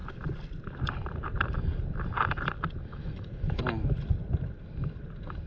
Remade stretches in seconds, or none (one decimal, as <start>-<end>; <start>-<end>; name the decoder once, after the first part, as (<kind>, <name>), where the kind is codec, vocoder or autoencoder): 2.9-3.6 (autoencoder, DAC-VAE)